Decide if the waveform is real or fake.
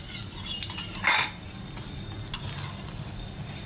real